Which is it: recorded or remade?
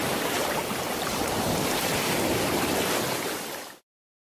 recorded